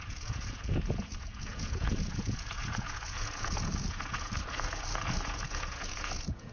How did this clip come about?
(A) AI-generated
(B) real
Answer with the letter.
A